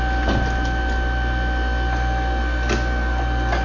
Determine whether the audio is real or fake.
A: real